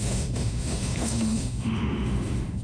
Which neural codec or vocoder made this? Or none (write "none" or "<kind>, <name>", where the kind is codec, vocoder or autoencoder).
autoencoder, DAC-VAE